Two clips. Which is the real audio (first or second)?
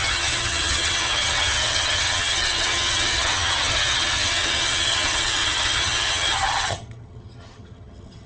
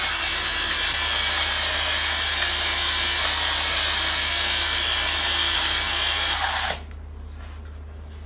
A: second